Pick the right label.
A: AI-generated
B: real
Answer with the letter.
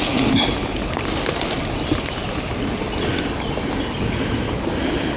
B